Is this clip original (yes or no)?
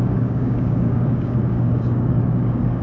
no